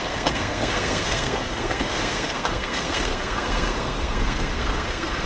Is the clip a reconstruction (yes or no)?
yes